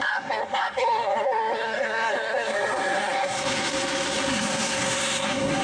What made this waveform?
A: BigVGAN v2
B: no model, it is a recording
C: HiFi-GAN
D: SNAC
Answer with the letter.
D